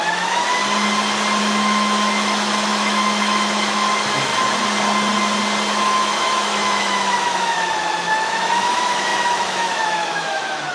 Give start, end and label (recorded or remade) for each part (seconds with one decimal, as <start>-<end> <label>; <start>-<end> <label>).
0.0-0.6 remade; 0.6-1.4 recorded; 1.4-4.3 remade; 4.3-5.8 recorded; 5.8-10.7 remade